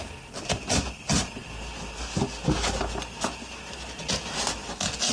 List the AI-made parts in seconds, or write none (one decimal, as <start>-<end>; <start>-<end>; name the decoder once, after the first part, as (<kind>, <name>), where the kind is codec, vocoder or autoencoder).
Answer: none